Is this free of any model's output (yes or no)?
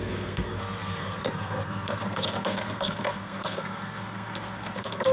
no